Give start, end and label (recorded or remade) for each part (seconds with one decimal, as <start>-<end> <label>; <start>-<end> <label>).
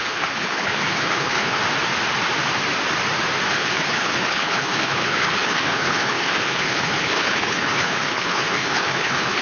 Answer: 0.0-1.6 remade; 1.6-3.5 recorded; 3.5-9.4 remade